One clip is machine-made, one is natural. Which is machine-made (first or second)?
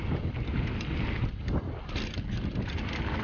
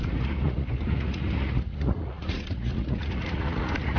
second